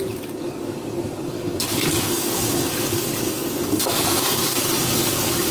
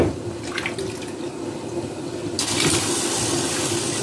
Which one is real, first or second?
second